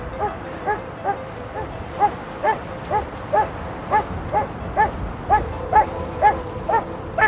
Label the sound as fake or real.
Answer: real